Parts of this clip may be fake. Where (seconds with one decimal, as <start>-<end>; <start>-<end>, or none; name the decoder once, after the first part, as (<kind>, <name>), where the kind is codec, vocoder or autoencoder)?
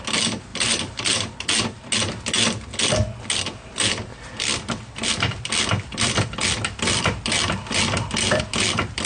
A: 0.5-1.8 (vocoder, BigVGAN v2); 4.1-8.4